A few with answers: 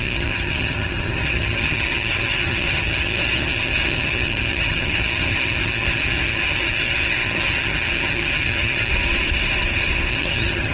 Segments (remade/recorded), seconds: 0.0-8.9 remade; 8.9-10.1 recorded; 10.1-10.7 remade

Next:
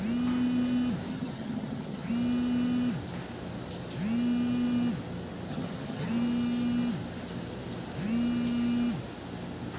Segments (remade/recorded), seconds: 0.0-1.1 recorded; 1.1-2.1 remade; 2.1-5.5 recorded; 5.5-6.1 remade; 6.1-9.8 recorded

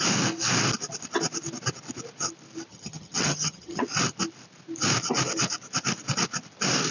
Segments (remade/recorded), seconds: 0.0-2.7 recorded; 2.7-3.8 remade; 3.8-6.9 recorded

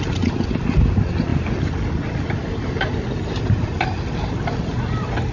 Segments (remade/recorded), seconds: 0.0-5.3 recorded

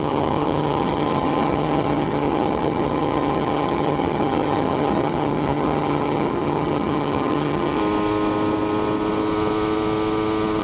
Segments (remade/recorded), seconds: 0.0-7.8 remade; 7.8-10.6 recorded

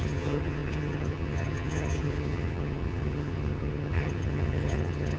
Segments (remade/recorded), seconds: 0.0-5.2 remade